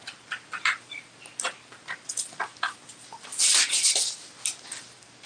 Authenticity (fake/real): real